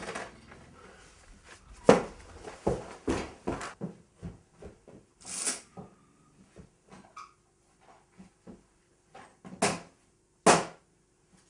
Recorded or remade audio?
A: recorded